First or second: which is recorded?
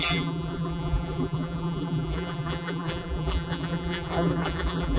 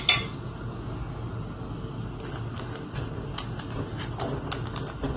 second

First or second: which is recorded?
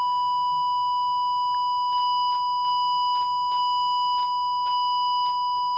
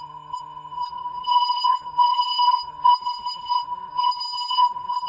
first